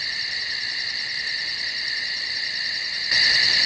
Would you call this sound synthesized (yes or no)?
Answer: no